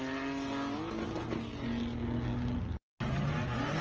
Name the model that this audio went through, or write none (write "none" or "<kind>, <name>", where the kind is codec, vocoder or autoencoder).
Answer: none